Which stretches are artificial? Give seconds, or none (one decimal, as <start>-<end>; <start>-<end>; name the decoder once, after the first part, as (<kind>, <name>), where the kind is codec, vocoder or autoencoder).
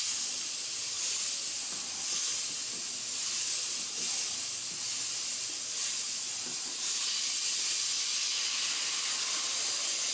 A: 6.5-7.6 (vocoder, Vocos)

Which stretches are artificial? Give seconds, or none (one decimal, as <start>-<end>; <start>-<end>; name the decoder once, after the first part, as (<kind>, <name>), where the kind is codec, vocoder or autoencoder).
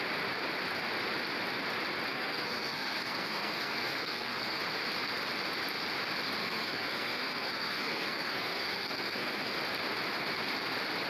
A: 2.1-4.6 (codec, SNAC); 6.4-9.6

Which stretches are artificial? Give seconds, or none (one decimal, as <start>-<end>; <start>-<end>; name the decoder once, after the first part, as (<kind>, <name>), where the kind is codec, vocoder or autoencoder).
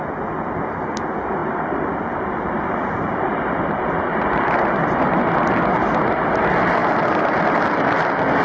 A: 1.4-5.3 (vocoder, BigVGAN v2)